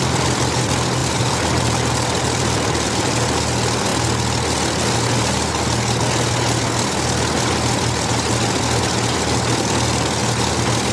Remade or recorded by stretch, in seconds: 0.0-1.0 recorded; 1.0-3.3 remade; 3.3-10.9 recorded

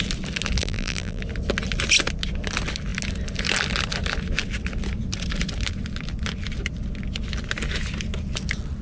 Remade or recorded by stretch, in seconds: 0.0-0.6 recorded; 0.6-1.2 remade; 1.2-8.8 recorded

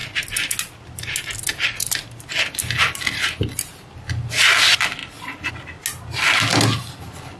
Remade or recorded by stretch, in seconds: 0.0-1.5 recorded; 1.5-3.0 remade; 3.0-7.4 recorded

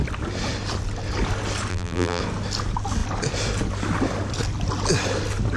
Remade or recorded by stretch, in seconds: 0.0-1.7 recorded; 1.7-2.2 remade; 2.2-5.6 recorded